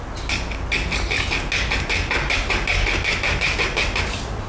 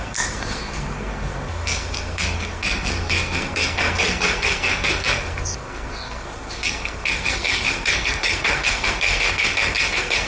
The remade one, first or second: second